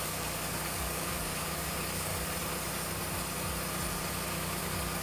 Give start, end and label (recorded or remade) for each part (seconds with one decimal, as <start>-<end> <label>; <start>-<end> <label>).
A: 0.0-2.1 remade; 2.1-4.1 recorded; 4.1-5.0 remade